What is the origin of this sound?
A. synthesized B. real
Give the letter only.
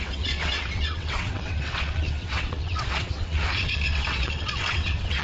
A